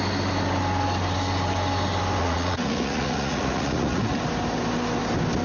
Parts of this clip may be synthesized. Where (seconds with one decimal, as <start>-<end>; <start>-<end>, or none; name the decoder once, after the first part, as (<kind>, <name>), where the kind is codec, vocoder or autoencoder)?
2.2-4.2 (vocoder, Vocos)